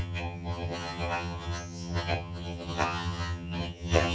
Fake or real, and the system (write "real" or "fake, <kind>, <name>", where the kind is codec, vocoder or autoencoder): fake, vocoder, HiFi-GAN